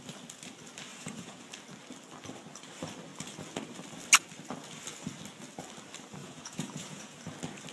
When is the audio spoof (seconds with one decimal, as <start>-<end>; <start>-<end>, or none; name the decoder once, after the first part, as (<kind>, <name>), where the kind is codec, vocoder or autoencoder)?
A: 0.9-1.4 (vocoder, Vocos); 6.2-7.2